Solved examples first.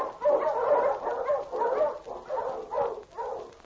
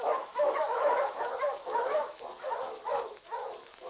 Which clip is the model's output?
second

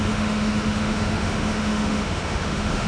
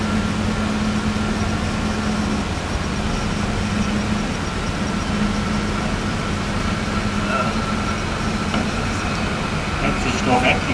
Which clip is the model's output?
first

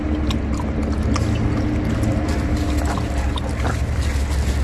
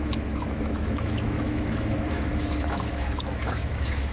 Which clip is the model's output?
second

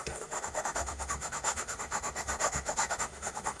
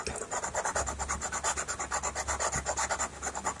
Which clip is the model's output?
first